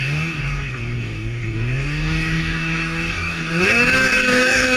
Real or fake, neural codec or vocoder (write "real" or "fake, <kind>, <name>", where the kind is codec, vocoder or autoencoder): fake, codec, DAC